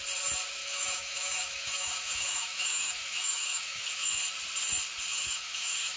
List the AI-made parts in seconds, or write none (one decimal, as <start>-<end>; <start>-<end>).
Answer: 0.6-4.2; 5.1-6.0